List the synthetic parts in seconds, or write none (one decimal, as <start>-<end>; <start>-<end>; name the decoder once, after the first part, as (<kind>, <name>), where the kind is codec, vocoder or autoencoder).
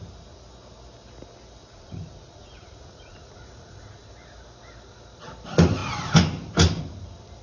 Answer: 1.6-4.1 (vocoder, Vocos)